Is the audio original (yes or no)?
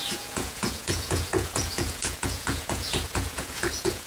no